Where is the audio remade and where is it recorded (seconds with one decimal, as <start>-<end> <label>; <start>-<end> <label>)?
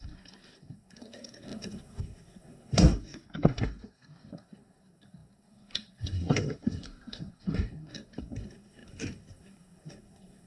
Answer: 0.0-10.5 remade